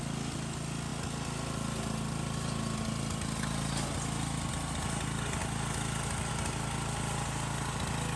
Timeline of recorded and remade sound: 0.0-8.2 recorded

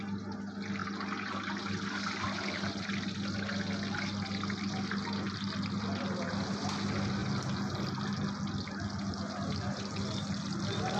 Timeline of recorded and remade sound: 0.0-11.0 recorded

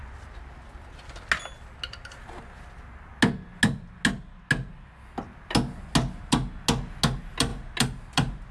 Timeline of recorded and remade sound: 0.0-8.5 recorded